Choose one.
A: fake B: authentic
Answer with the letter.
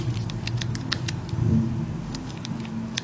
B